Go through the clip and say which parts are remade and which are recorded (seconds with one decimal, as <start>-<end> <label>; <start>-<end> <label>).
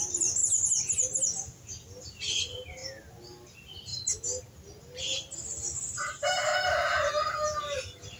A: 0.0-0.4 remade; 0.4-2.0 recorded; 2.0-2.8 remade; 2.8-3.5 recorded; 3.5-3.9 remade; 3.9-4.8 recorded; 4.8-6.5 remade; 6.5-7.3 recorded; 7.3-8.2 remade